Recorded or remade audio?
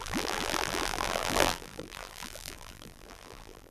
remade